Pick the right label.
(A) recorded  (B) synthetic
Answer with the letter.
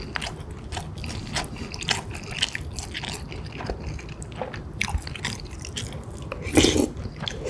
A